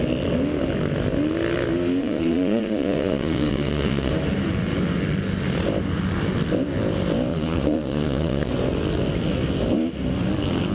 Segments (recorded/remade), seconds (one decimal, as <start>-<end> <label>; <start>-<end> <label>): 0.0-2.0 recorded; 2.0-4.1 remade; 4.1-7.3 recorded; 7.3-8.5 remade; 8.5-10.7 recorded